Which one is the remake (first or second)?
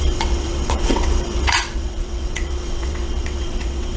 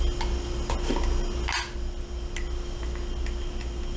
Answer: first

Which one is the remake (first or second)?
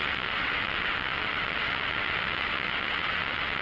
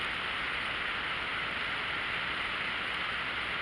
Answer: first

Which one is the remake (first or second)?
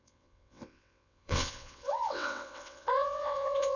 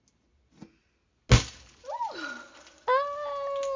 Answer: first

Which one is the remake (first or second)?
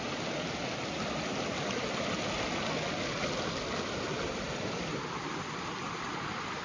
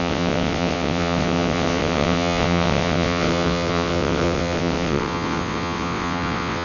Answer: second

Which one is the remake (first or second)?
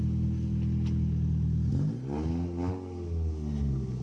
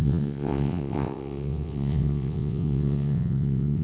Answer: second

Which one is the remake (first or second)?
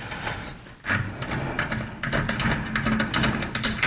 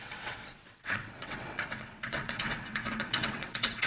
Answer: second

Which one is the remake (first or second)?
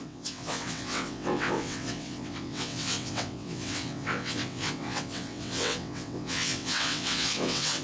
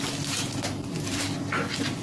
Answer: first